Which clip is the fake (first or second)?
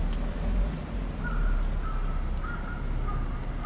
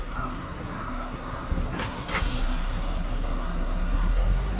second